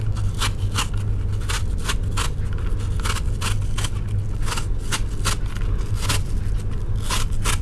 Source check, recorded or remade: recorded